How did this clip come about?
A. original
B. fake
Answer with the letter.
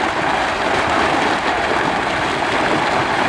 A